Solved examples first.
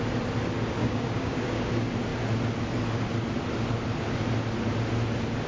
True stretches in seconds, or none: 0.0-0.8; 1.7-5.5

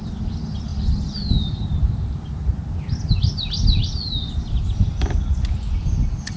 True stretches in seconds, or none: 0.0-6.4

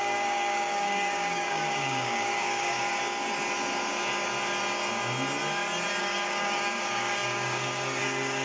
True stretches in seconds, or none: 2.9-6.0

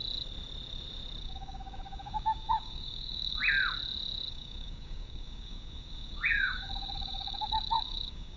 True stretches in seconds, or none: 0.0-1.2; 3.4-4.3

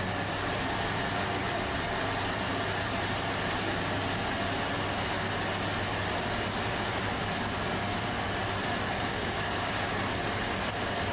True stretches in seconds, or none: 0.0-9.1; 10.0-11.1

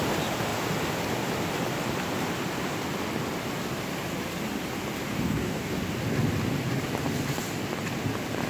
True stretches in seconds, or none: 0.0-5.1; 5.8-8.5

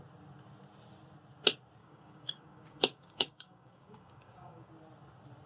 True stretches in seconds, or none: 0.0-1.8; 4.7-5.5

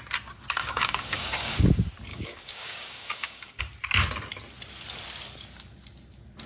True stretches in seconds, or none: 0.0-0.6; 1.6-2.1; 3.6-6.5